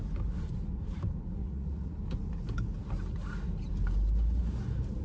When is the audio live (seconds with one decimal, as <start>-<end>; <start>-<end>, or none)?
0.0-1.4; 1.9-5.0